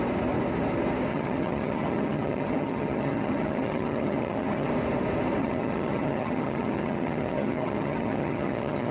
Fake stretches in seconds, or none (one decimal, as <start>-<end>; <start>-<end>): 1.1-4.7; 5.4-8.9